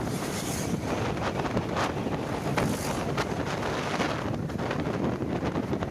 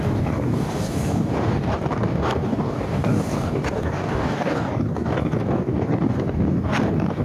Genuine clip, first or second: first